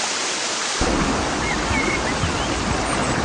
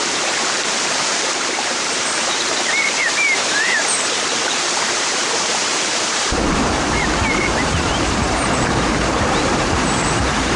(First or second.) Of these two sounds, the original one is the first